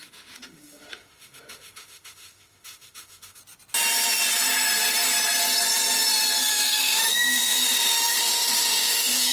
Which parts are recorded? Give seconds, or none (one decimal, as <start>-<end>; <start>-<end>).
3.4-6.4